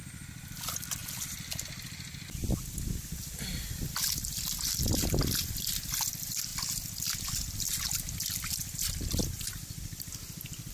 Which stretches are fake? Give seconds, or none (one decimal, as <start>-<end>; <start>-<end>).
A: 1.0-4.6